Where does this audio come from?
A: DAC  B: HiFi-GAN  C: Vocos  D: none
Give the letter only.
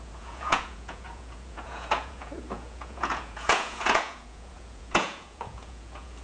C